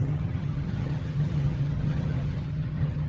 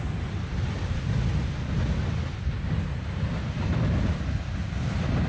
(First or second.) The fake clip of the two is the first